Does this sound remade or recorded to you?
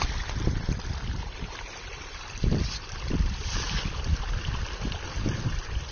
remade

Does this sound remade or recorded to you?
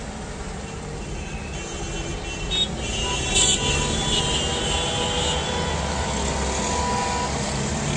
recorded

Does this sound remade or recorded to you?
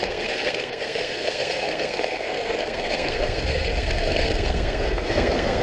remade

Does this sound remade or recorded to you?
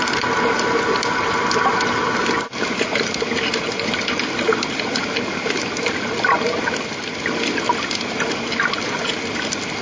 recorded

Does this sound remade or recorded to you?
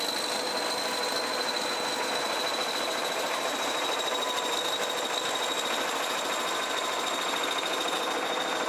recorded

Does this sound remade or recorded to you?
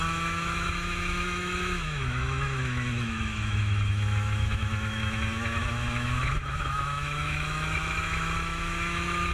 remade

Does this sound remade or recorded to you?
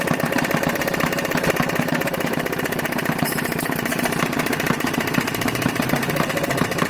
remade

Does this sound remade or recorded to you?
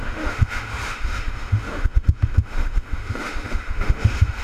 remade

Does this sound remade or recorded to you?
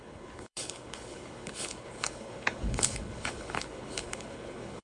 remade